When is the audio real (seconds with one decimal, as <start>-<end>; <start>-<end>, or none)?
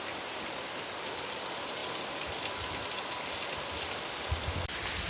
0.0-5.1